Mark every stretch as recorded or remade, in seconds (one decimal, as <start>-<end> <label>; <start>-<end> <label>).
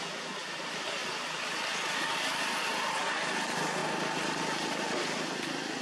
0.0-5.8 recorded